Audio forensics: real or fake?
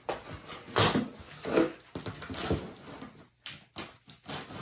real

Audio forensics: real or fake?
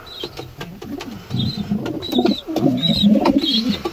real